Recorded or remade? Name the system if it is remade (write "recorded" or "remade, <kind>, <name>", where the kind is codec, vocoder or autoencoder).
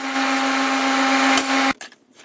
recorded